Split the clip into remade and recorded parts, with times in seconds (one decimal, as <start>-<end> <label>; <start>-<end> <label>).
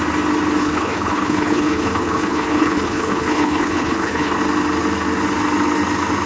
0.0-0.6 recorded; 0.6-4.4 remade; 4.4-6.3 recorded